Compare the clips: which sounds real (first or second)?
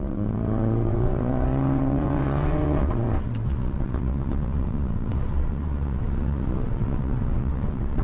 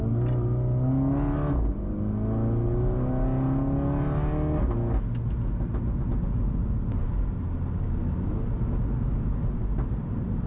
second